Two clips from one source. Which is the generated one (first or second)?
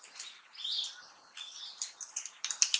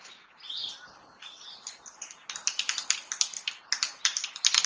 first